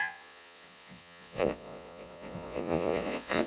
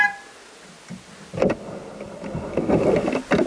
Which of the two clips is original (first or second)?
second